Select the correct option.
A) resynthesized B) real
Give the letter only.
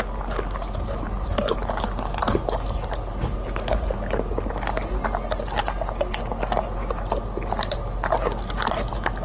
B